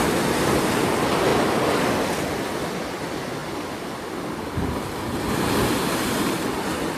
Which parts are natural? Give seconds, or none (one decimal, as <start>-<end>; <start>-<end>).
0.0-7.0